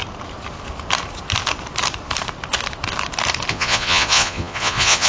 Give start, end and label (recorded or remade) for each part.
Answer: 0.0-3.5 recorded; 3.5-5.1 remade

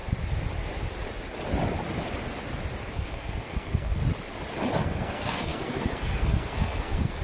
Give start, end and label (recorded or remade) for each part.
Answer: 0.0-2.8 recorded; 2.8-4.0 remade; 4.0-4.8 recorded; 4.8-7.2 remade

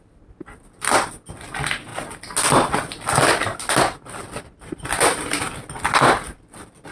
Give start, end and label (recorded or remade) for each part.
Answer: 0.0-6.9 recorded

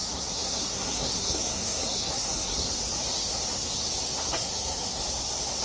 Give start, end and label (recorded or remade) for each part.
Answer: 0.0-2.7 remade; 2.7-4.2 recorded; 4.2-5.0 remade; 5.0-5.6 recorded